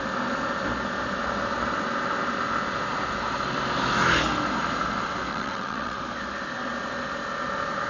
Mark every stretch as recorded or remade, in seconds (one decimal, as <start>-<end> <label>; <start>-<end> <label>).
0.0-5.3 recorded; 5.3-6.0 remade; 6.0-7.9 recorded